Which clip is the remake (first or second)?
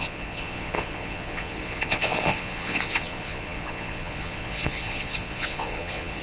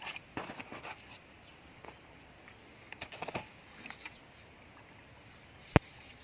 first